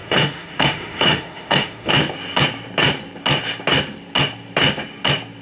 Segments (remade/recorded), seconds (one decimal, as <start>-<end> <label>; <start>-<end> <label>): 0.0-1.9 remade; 1.9-5.4 recorded